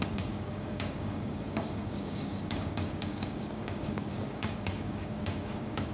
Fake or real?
fake